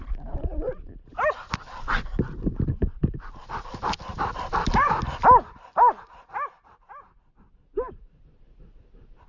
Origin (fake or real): real